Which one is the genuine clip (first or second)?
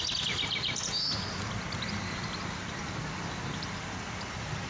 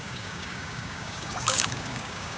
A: first